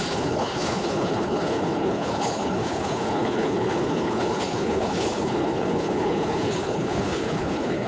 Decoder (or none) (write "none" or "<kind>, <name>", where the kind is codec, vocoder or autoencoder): codec, HILCodec